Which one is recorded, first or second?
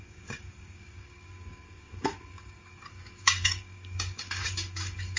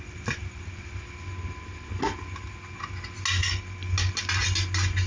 second